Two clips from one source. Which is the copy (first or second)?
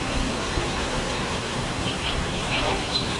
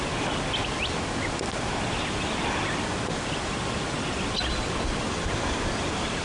first